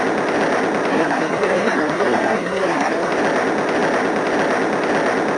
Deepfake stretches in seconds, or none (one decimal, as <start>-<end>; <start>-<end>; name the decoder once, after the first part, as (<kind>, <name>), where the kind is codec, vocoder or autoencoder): 0.9-3.1 (codec, SNAC)